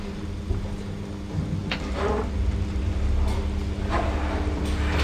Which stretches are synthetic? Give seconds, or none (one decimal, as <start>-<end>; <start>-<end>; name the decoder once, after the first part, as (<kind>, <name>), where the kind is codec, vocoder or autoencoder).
none